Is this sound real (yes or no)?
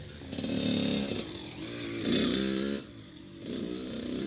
yes